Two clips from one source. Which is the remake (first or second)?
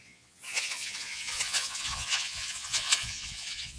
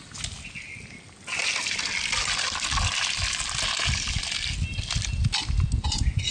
first